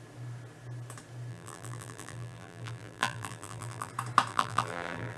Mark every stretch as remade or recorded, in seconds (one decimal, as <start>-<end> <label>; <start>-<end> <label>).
0.0-1.3 recorded; 1.3-3.9 remade; 3.9-4.3 recorded; 4.3-5.2 remade